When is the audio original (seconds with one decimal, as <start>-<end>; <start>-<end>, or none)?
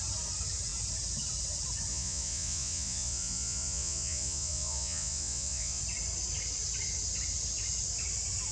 0.0-1.9; 5.8-8.5